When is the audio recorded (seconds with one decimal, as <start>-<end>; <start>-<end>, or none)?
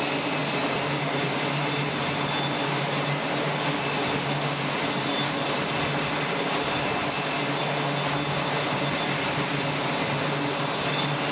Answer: 0.0-11.3